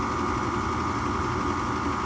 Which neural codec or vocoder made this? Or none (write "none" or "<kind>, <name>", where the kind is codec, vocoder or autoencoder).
none